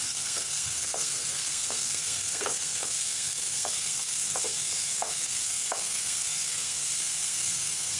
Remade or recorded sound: remade